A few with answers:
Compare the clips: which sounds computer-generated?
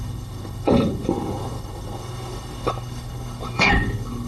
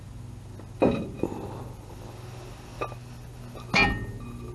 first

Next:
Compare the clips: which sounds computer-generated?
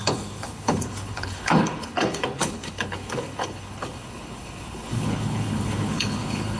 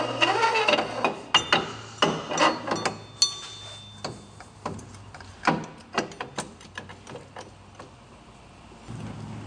first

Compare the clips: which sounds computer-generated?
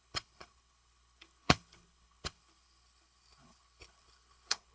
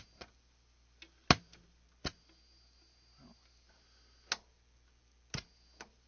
first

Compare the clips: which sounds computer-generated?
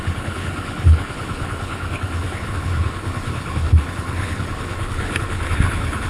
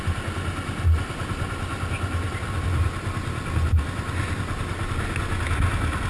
first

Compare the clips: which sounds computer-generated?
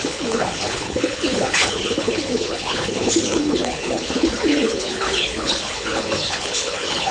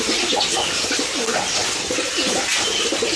first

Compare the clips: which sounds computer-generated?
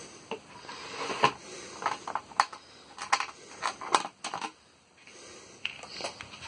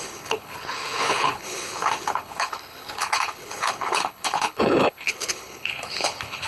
second